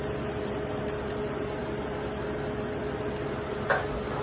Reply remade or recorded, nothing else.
recorded